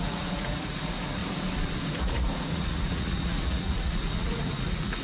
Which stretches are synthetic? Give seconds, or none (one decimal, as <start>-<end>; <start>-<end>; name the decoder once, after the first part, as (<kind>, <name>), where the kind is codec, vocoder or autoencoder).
0.0-1.2 (vocoder, Vocos); 1.9-5.0

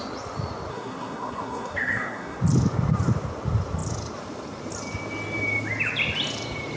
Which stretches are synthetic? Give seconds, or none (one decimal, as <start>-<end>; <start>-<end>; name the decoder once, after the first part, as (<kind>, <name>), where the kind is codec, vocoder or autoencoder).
0.7-2.4 (codec, SNAC)

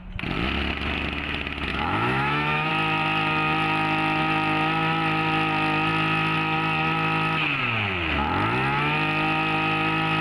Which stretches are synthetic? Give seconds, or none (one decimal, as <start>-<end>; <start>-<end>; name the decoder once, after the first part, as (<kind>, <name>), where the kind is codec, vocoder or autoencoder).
1.7-2.7 (autoencoder, DAC-VAE)

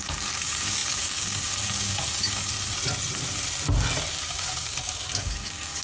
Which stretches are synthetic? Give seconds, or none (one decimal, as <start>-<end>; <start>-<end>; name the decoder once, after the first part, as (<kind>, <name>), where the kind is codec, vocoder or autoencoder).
0.0-2.5 (codec, DAC); 4.1-5.8

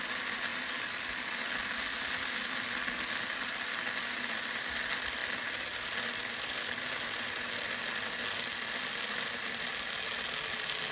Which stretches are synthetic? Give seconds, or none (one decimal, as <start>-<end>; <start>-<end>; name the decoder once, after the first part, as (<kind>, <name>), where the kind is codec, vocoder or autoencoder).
none

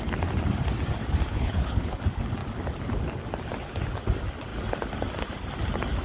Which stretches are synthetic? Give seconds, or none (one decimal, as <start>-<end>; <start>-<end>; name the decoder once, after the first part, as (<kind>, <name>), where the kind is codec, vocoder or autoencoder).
1.3-2.0 (codec, HILCodec)

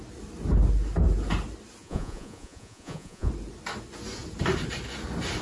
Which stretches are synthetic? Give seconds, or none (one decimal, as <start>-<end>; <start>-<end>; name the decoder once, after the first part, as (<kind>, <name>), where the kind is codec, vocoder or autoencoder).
1.8-3.3 (vocoder, Vocos)

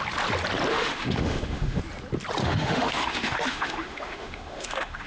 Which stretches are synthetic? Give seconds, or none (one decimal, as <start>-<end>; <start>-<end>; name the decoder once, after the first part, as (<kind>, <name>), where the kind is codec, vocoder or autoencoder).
0.7-1.8 (autoencoder, DAC-VAE); 2.4-5.1